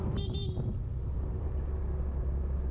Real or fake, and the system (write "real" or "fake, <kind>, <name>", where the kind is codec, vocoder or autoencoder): real